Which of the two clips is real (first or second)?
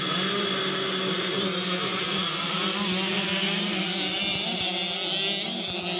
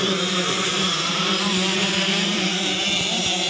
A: first